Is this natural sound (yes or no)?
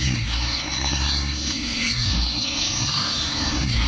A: no